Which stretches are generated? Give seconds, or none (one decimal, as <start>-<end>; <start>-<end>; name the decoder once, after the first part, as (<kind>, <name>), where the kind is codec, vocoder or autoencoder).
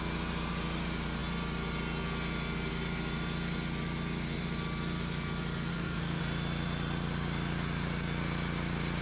5.7-6.2 (codec, SNAC)